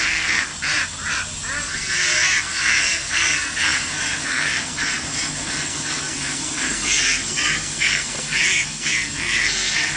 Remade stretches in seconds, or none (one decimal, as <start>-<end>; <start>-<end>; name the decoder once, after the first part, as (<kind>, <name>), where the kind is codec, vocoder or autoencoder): 0.0-0.5 (codec, SNAC); 1.6-10.0